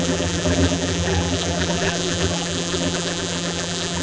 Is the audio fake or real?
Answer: fake